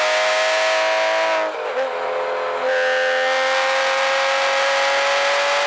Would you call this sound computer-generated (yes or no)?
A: no